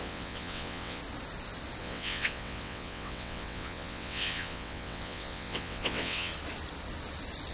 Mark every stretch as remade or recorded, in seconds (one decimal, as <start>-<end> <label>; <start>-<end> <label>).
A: 0.0-1.0 remade; 1.0-1.8 recorded; 1.8-6.3 remade; 6.3-7.5 recorded